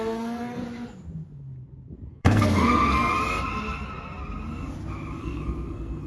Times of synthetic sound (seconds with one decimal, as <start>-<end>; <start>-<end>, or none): 0.0-0.6; 2.1-3.1; 5.2-6.1